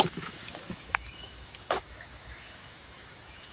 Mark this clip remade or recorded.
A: remade